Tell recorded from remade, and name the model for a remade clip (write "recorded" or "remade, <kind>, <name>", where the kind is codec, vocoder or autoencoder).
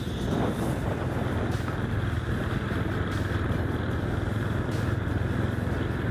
recorded